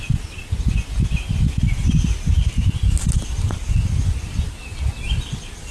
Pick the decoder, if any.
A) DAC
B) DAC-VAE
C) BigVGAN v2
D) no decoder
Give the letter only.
D